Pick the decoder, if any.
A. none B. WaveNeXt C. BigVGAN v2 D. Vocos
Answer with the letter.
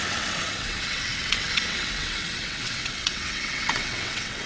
B